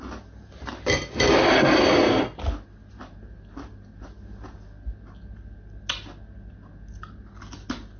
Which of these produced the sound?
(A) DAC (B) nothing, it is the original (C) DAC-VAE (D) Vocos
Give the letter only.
B